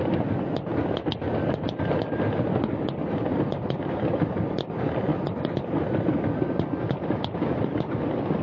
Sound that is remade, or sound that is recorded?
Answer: recorded